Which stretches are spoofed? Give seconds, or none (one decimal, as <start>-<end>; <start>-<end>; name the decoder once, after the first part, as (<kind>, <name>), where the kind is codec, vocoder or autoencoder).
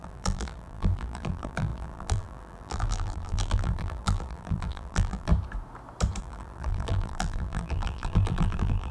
0.0-5.3 (vocoder, BigVGAN v2); 6.2-8.9